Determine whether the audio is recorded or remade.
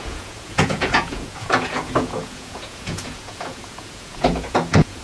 remade